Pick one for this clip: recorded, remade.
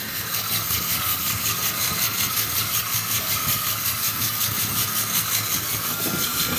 remade